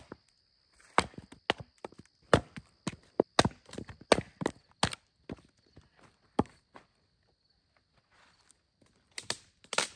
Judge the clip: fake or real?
real